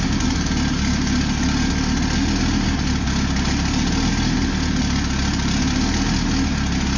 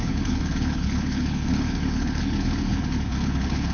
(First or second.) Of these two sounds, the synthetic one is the second